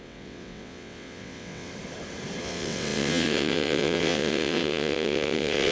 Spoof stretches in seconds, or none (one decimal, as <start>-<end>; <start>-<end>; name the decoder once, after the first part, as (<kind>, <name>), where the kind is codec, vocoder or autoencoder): 0.0-1.7 (vocoder, WaveNeXt); 2.4-5.7